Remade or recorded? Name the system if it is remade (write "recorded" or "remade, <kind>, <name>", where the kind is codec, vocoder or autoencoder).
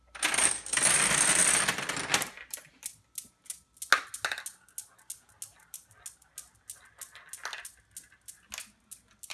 recorded